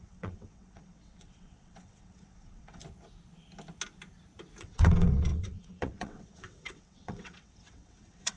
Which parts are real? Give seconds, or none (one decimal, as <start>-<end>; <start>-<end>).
2.8-4.6